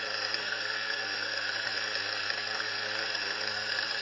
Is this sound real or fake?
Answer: fake